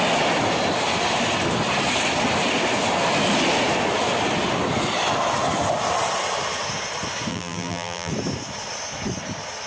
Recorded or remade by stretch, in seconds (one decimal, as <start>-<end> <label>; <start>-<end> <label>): 0.0-7.3 recorded; 7.3-8.1 remade; 8.1-9.7 recorded